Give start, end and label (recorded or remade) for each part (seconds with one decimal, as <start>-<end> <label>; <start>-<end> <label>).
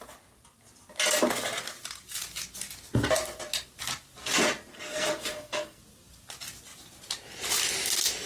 0.0-4.7 recorded; 4.7-5.8 remade; 5.8-8.3 recorded